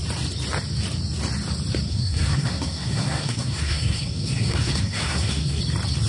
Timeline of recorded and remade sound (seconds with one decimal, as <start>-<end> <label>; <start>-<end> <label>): 0.0-1.9 recorded; 1.9-5.6 remade; 5.6-6.1 recorded